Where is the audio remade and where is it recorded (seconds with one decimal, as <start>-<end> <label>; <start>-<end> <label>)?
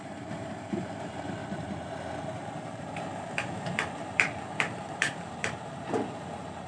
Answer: 0.0-1.4 remade; 1.4-2.3 recorded; 2.3-6.7 remade